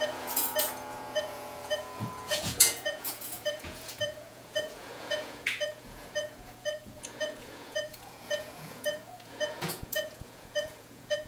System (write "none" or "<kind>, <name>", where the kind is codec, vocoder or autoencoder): vocoder, Vocos